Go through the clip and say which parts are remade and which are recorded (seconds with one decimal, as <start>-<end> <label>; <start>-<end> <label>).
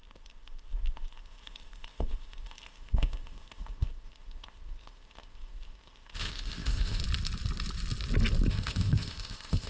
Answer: 0.0-7.0 remade; 7.0-8.5 recorded; 8.5-9.7 remade